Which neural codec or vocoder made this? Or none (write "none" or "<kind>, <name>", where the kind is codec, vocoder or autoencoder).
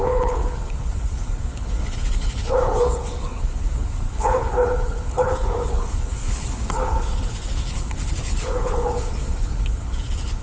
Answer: codec, HILCodec